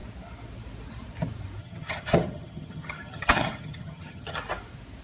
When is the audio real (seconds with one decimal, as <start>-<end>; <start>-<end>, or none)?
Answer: 0.0-1.6; 4.4-5.0